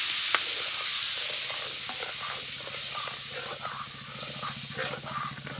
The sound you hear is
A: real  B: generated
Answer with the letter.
A